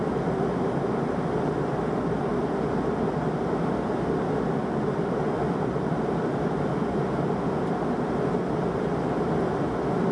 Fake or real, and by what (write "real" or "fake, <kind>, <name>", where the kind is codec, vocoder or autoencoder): real